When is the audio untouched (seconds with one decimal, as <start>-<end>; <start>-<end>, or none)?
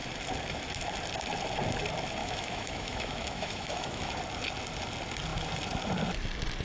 0.0-2.2; 4.1-6.6